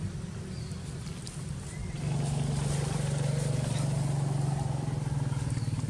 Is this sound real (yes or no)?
yes